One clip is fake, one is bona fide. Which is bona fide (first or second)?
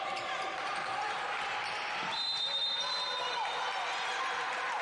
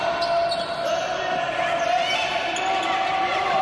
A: second